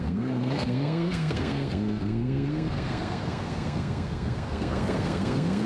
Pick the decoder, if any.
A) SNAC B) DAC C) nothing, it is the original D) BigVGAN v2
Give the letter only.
A